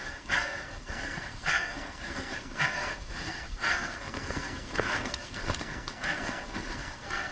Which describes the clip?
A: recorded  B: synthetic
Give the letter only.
B